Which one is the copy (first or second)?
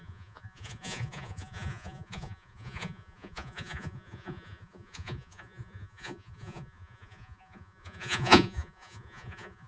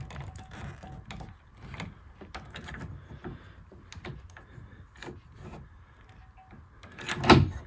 first